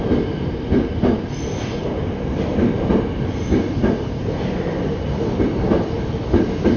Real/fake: fake